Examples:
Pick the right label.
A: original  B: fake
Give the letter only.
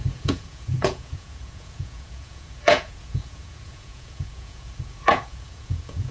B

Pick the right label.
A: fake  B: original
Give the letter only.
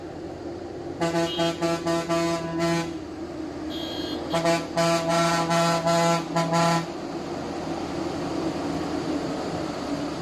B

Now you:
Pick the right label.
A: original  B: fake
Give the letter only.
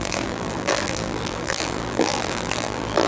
B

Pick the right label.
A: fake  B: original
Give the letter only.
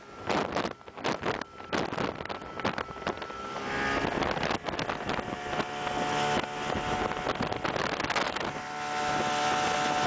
B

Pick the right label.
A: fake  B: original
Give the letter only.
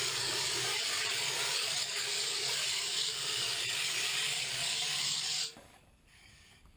A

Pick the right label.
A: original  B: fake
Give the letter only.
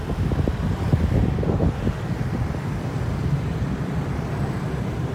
A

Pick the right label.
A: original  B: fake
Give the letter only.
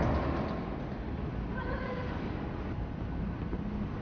A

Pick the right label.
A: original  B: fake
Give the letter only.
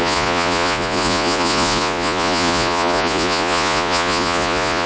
B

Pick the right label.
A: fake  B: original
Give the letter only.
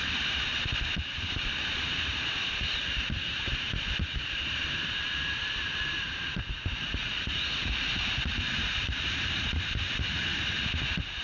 A